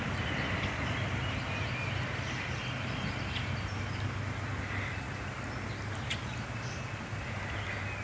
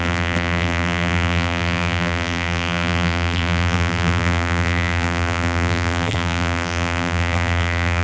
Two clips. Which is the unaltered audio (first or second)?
first